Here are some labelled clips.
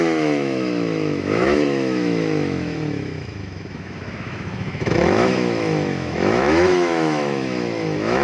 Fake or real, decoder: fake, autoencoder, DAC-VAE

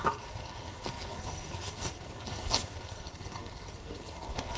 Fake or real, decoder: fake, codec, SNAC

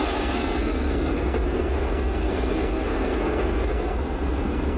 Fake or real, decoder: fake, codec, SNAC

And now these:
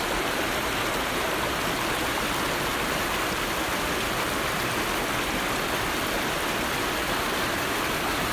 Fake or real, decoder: real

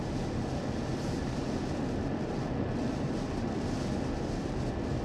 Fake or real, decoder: real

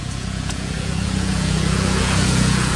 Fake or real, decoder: fake, vocoder, Vocos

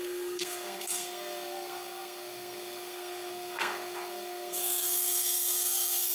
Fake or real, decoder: fake, codec, SNAC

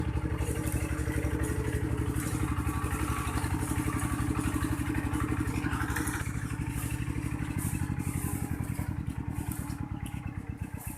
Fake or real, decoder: real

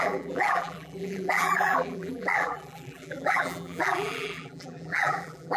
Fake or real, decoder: fake, vocoder, BigVGAN v2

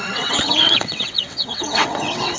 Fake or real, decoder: fake, vocoder, WaveNeXt